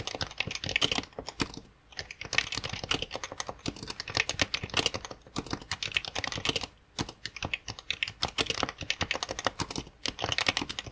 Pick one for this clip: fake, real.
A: real